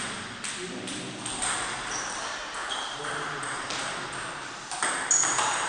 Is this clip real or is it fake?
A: real